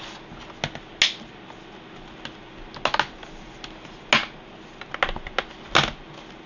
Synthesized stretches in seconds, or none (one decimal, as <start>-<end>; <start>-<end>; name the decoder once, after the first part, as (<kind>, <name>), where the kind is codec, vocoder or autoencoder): none